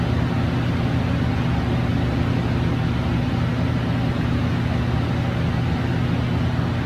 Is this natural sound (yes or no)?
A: yes